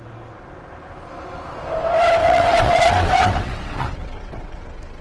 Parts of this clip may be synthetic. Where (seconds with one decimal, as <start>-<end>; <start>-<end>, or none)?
2.2-4.6